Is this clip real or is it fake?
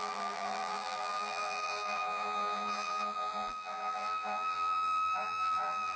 fake